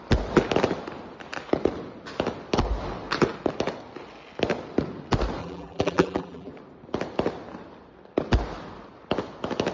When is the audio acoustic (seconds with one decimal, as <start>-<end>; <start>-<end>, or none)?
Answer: 0.0-5.4; 6.5-9.7